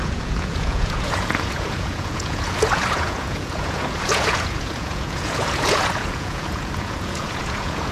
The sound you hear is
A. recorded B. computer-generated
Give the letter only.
B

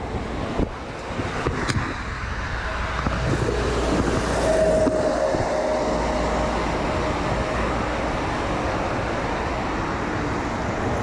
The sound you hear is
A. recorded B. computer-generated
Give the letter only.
A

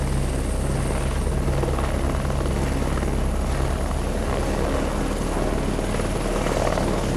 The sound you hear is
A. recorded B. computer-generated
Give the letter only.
A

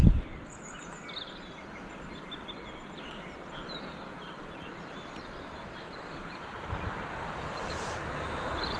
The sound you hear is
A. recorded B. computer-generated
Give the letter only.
A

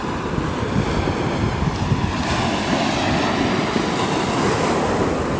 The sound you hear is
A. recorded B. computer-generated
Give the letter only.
A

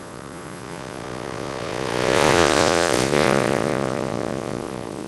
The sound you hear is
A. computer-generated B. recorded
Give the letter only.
A